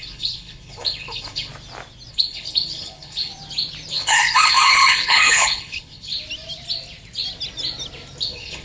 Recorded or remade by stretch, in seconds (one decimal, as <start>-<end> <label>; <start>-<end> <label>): 0.0-1.5 remade; 1.5-2.1 recorded; 2.1-3.3 remade; 3.3-3.9 recorded; 3.9-6.1 remade; 6.1-8.2 recorded; 8.2-8.6 remade